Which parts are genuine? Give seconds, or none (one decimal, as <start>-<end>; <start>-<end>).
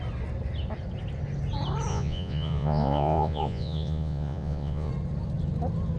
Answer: 0.0-1.9; 4.9-6.0